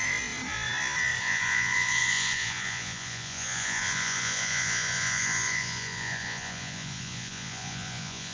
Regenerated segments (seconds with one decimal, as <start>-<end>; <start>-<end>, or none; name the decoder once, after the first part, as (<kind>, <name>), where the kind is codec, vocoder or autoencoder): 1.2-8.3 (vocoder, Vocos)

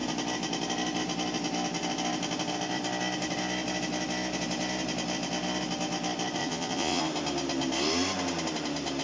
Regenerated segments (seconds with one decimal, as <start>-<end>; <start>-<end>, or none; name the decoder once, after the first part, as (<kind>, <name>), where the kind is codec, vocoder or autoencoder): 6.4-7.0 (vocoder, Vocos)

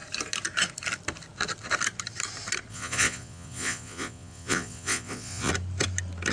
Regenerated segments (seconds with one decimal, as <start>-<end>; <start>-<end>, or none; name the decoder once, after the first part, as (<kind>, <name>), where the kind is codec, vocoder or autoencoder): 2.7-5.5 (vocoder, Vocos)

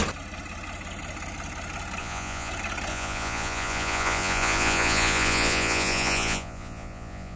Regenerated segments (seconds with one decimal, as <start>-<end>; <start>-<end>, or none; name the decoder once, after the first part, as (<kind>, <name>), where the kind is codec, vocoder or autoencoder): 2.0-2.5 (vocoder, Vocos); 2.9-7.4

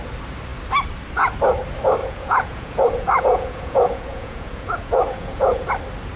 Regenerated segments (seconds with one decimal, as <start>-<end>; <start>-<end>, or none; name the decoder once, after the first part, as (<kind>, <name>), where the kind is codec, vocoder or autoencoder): 2.0-5.7 (vocoder, Vocos)

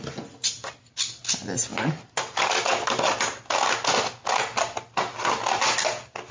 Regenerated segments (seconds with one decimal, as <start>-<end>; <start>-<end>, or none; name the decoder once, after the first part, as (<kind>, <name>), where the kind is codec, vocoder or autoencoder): none

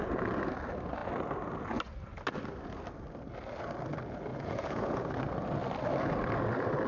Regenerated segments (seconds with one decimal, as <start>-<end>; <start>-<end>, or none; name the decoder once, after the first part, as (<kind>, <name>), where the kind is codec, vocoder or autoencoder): 4.3-5.0 (vocoder, Vocos)

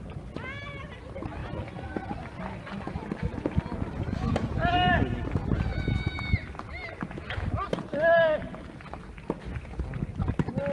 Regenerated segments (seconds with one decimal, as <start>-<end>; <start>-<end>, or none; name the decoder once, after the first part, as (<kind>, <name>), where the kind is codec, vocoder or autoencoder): none